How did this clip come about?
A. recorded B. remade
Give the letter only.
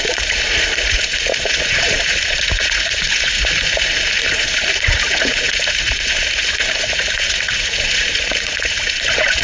B